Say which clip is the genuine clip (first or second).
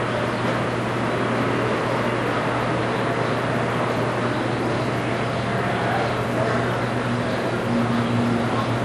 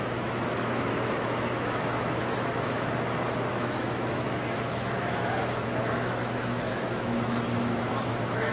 first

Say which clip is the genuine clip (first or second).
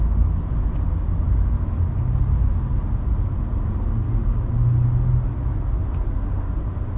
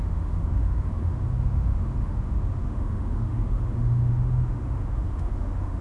first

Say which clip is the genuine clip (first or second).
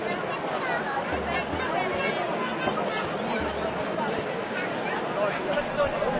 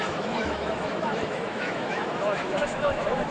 first